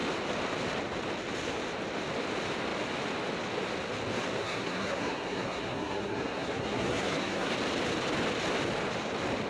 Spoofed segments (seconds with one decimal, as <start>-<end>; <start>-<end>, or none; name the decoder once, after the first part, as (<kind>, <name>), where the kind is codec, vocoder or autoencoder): 4.4-7.5 (codec, SNAC)